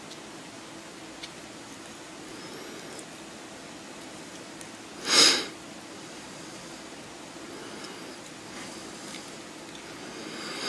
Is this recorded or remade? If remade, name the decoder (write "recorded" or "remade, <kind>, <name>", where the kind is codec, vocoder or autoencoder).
recorded